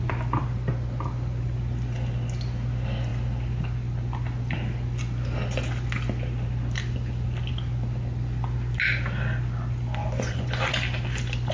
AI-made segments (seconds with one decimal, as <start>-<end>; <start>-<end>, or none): 10.0-10.7